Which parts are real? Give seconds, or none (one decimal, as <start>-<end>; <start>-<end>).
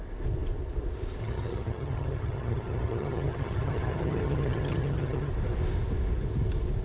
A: 0.0-1.2; 5.3-6.8